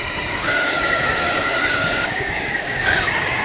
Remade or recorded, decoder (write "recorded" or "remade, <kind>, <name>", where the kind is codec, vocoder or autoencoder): remade, codec, DAC